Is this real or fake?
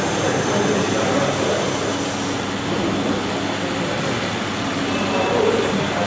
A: real